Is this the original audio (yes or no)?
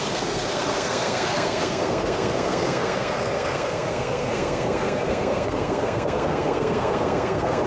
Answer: no